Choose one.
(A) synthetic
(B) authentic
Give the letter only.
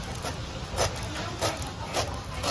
B